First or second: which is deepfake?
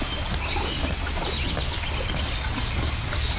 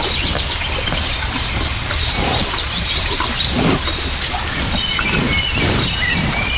second